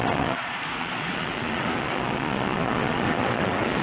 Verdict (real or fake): fake